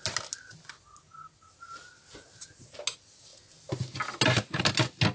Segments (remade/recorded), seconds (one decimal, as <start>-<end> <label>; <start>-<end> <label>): 0.0-5.1 recorded